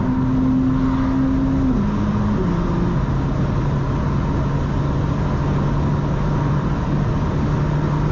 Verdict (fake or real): real